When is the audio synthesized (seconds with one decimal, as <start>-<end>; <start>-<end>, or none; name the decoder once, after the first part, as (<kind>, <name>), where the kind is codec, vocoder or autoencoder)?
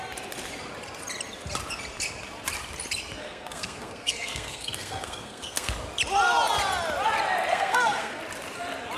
3.2-5.7 (codec, SNAC); 7.5-8.2